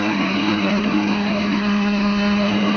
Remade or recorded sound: remade